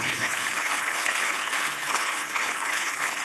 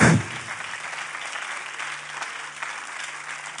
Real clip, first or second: second